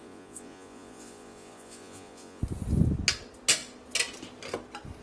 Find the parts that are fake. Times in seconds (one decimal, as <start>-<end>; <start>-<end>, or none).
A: 0.0-2.4